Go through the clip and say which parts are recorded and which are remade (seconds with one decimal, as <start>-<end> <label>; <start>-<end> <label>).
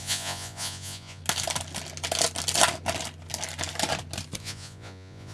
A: 0.0-1.2 remade; 1.2-4.4 recorded; 4.4-5.3 remade